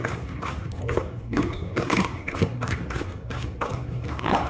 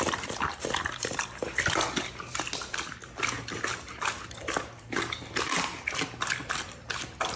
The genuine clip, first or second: second